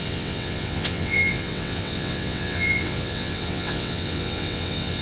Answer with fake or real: fake